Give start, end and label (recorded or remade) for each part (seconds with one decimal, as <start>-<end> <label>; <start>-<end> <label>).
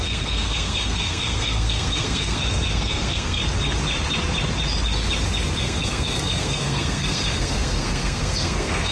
0.0-3.4 remade; 3.4-5.6 recorded; 5.6-8.9 remade